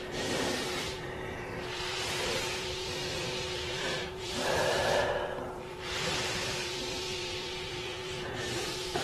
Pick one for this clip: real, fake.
fake